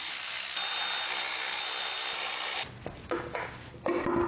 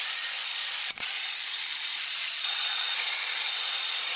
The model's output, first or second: second